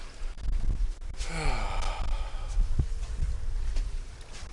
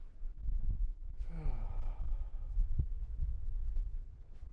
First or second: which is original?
first